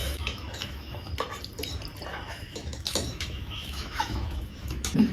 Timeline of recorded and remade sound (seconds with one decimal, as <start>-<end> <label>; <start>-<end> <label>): 0.0-1.1 remade; 1.1-2.1 recorded; 2.1-5.1 remade